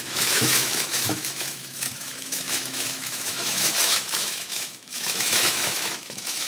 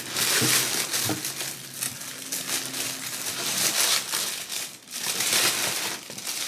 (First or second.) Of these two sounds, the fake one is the first